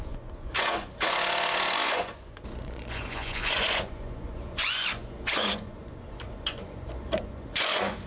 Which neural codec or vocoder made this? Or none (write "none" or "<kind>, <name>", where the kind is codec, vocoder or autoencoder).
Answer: vocoder, Vocos